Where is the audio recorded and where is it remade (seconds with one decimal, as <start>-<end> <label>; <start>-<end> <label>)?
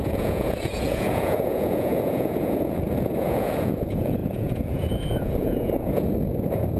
0.0-6.8 remade